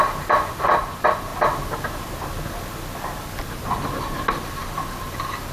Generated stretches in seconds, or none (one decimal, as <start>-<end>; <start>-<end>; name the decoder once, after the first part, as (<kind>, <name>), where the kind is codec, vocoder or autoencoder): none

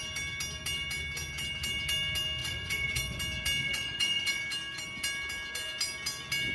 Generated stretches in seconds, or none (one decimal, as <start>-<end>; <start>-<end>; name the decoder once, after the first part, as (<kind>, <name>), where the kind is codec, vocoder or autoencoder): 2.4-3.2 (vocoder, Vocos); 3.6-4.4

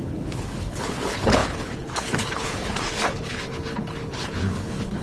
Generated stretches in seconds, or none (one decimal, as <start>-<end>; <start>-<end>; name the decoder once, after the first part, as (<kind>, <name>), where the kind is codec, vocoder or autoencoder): 0.0-5.0 (codec, HILCodec)

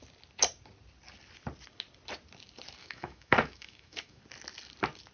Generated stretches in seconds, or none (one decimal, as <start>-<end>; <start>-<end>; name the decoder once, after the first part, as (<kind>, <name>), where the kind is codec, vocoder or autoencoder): 2.8-4.2 (autoencoder, DAC-VAE)